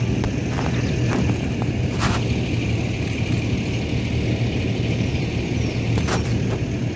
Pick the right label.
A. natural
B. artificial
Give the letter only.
A